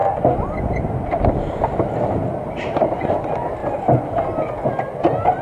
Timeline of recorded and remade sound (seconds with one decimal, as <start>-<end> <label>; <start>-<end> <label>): 0.0-5.4 recorded